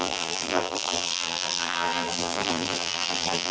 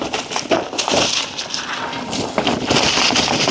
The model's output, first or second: first